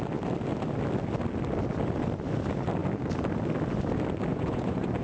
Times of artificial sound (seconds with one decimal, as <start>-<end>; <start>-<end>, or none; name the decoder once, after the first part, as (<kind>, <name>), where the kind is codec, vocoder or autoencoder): 4.3-5.0 (vocoder, Vocos)